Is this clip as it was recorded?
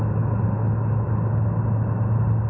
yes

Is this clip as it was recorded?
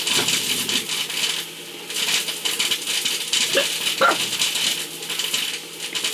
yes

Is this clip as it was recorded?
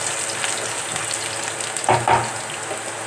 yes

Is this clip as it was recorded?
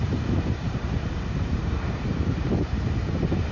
no